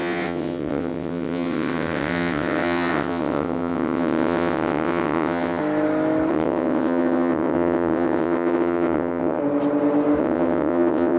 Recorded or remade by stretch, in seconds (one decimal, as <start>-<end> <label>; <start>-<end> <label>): 0.0-5.6 remade; 5.6-6.3 recorded; 6.3-9.4 remade; 9.4-10.2 recorded; 10.2-11.2 remade